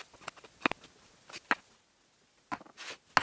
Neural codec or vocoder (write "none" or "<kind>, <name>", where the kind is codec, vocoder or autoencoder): none